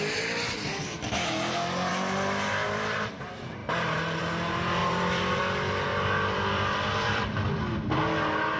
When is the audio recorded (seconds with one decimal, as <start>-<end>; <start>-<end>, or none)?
0.0-1.9; 3.1-4.8; 5.4-5.9; 7.6-8.6